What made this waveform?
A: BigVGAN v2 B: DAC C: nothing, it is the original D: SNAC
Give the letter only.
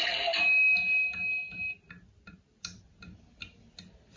C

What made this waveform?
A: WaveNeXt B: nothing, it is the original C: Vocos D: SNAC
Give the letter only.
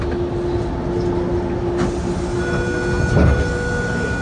B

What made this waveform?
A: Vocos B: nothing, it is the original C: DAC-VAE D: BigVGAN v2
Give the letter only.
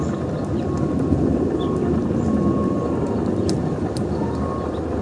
B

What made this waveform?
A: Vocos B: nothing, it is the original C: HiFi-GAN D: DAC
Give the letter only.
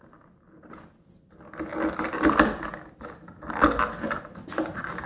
B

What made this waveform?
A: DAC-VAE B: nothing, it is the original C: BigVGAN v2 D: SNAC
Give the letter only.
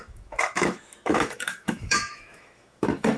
A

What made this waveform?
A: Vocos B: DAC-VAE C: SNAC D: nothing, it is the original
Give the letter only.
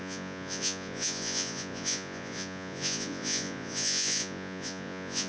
A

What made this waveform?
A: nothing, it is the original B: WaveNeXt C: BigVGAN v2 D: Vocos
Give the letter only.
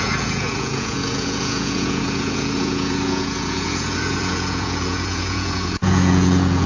D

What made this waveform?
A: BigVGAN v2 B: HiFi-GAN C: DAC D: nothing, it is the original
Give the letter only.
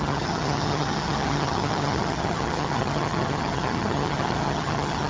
B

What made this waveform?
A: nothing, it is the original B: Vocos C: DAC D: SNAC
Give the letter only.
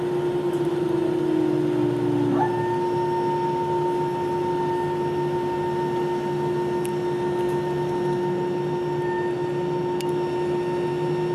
A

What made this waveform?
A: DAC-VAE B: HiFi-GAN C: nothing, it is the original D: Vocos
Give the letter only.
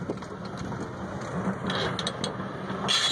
C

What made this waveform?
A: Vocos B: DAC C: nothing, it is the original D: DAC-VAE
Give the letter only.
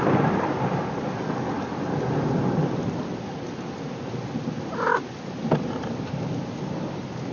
C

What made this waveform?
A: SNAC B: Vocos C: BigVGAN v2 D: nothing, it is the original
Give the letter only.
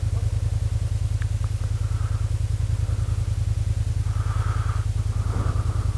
D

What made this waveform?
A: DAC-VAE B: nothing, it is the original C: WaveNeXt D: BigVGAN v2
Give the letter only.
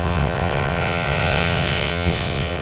C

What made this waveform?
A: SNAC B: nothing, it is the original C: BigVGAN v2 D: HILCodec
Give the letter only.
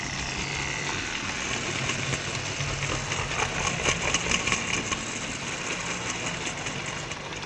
B